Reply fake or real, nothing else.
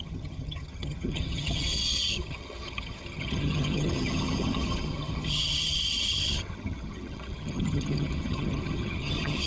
fake